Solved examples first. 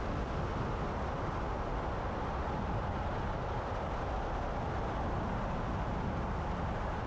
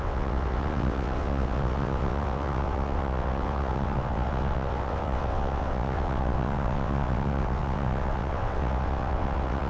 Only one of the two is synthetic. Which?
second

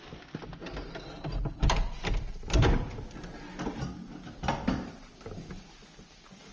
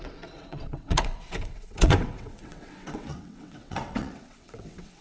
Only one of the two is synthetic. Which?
second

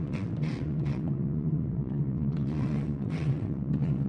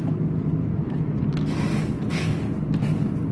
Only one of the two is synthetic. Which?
first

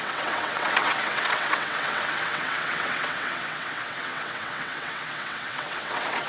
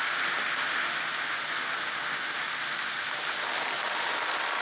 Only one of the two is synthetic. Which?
first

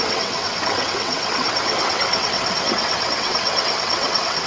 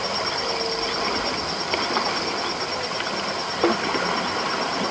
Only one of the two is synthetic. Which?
first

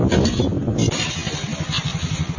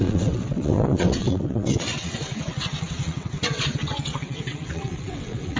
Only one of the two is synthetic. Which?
second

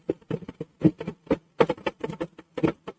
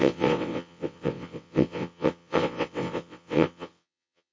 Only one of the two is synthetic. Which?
second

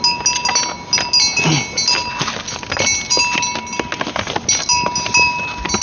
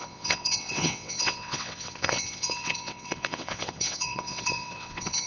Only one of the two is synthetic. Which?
second